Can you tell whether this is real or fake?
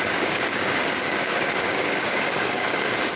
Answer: fake